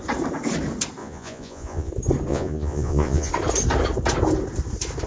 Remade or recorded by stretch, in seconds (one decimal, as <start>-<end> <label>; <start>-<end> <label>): 0.0-1.0 recorded; 1.0-1.9 remade; 1.9-2.3 recorded; 2.3-3.3 remade; 3.3-5.1 recorded